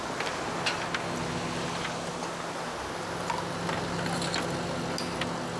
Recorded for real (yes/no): yes